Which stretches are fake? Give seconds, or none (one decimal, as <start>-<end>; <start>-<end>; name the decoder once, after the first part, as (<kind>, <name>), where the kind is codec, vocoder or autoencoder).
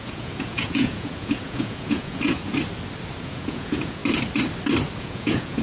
0.0-2.5 (vocoder, Vocos); 3.2-4.0; 5.0-5.6